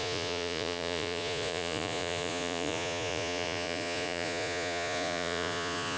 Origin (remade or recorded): remade